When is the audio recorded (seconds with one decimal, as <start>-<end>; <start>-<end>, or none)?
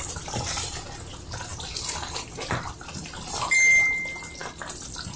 0.0-5.2